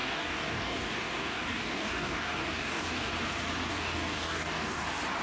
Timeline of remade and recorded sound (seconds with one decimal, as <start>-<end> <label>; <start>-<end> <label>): 0.0-3.1 remade; 3.1-3.7 recorded; 3.7-4.8 remade; 4.8-5.2 recorded